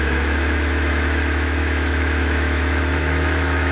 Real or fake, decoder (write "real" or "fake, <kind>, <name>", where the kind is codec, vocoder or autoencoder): fake, autoencoder, DAC-VAE